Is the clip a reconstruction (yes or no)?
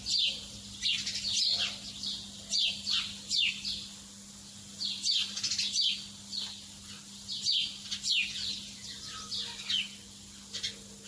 no